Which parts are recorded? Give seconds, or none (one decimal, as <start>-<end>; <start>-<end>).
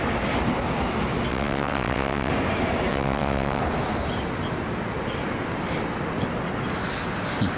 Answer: 0.0-1.3; 2.3-2.9; 3.6-7.6